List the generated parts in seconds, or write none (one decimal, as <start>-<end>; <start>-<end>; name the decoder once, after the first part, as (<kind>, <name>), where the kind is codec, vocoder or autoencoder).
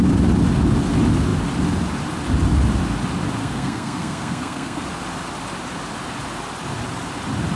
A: 3.4-4.8 (codec, SNAC)